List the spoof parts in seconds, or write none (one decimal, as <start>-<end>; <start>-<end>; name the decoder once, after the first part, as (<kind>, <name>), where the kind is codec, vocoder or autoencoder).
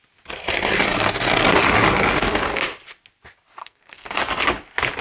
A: 3.6-4.2 (codec, SNAC)